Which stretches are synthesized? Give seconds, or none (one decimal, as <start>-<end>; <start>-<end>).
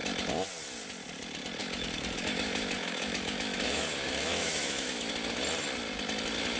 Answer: 1.6-5.1